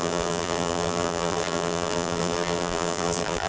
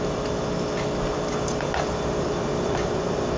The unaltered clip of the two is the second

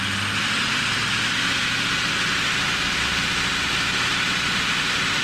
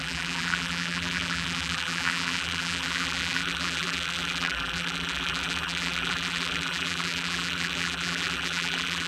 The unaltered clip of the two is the first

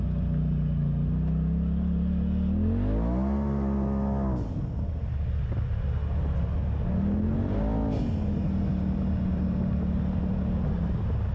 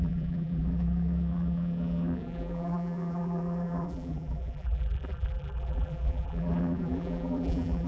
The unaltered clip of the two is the first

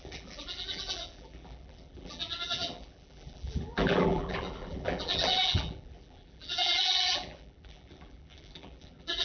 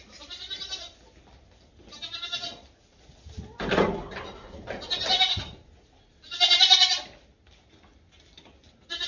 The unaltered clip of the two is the second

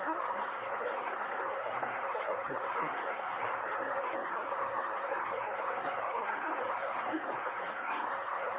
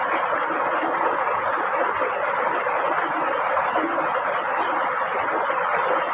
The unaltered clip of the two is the second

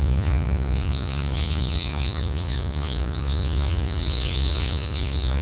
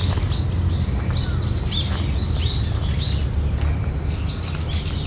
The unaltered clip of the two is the second